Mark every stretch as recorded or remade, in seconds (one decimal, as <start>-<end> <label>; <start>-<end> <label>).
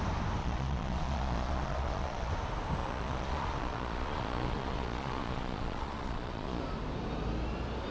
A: 0.0-0.4 recorded; 0.4-2.3 remade; 2.3-2.8 recorded; 2.8-6.6 remade; 6.6-7.9 recorded